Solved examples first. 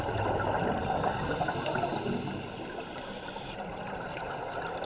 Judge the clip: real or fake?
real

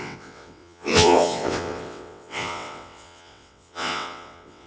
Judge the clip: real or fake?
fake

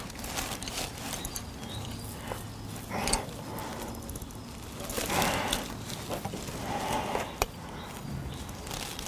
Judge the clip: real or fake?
real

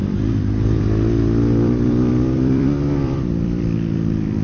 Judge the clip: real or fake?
fake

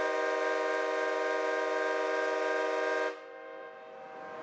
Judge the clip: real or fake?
real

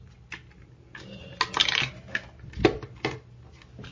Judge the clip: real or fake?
real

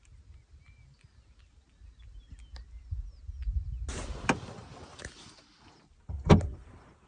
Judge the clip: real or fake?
real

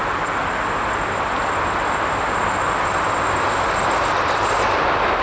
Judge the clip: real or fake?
real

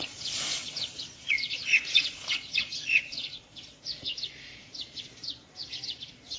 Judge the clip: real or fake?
fake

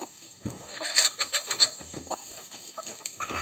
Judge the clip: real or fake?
fake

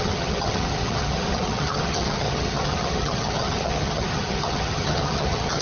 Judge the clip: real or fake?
fake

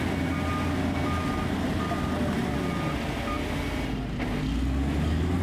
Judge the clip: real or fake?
real